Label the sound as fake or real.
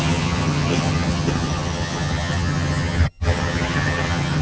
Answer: fake